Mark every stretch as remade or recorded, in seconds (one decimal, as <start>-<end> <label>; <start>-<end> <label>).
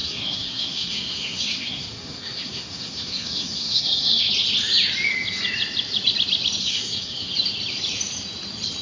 0.0-4.3 remade; 4.3-6.6 recorded; 6.6-7.3 remade; 7.3-8.8 recorded